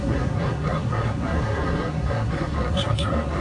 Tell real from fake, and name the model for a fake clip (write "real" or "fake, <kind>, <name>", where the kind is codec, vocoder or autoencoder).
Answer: fake, codec, SNAC